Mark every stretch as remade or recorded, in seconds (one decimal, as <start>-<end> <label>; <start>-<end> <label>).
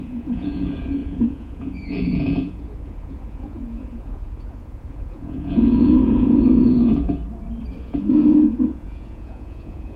0.0-7.2 remade; 7.2-7.8 recorded; 7.8-10.0 remade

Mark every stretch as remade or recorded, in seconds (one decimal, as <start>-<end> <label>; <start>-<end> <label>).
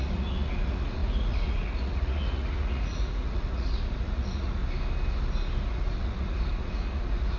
0.0-4.6 remade; 4.6-5.6 recorded; 5.6-7.4 remade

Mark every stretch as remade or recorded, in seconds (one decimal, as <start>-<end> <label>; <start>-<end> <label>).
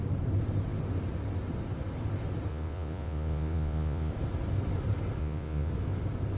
0.0-2.5 recorded; 2.5-4.1 remade; 4.1-5.2 recorded; 5.2-5.7 remade; 5.7-6.4 recorded